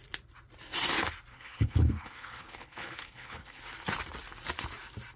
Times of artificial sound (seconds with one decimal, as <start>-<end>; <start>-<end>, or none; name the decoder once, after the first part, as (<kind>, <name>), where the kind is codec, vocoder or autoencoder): 1.3-3.6 (codec, HILCodec)